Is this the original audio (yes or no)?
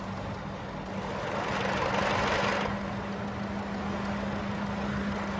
yes